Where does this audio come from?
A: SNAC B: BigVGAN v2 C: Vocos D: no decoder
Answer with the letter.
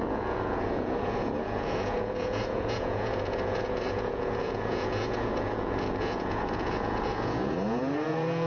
C